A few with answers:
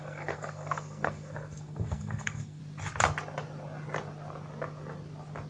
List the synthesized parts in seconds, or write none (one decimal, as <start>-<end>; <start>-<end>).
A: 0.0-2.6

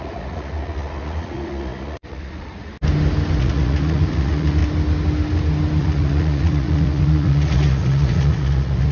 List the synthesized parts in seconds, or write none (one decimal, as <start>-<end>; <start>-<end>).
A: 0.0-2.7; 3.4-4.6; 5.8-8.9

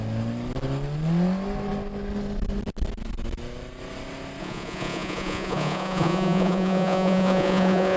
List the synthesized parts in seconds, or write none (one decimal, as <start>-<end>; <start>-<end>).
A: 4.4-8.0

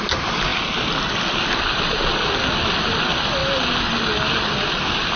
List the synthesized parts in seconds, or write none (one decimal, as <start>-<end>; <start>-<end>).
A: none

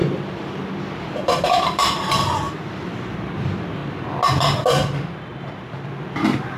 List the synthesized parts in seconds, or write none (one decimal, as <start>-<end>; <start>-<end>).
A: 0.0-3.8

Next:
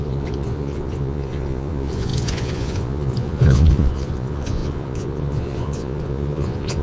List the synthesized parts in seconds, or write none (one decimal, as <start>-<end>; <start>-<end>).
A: 0.0-6.8

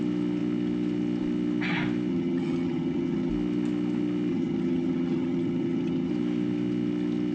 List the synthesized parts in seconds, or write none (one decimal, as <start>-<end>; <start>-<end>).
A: 2.1-3.3; 4.3-6.1